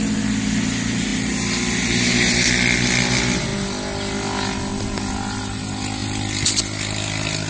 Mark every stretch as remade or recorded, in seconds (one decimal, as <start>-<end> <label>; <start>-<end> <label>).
0.0-1.1 recorded; 1.1-2.5 remade; 2.5-7.5 recorded